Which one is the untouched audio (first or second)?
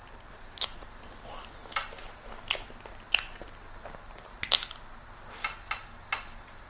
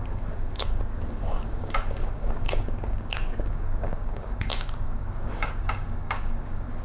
first